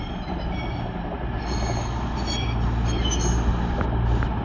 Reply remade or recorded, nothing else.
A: recorded